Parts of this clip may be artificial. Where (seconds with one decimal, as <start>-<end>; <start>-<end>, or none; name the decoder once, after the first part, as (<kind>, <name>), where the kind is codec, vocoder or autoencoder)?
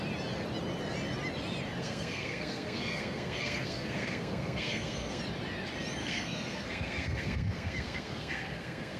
1.8-5.2 (codec, SNAC); 6.0-9.0